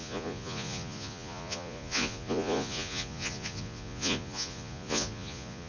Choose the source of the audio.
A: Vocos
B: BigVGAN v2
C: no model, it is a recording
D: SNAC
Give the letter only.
A